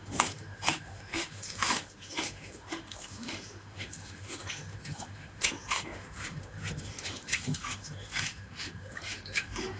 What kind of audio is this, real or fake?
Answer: fake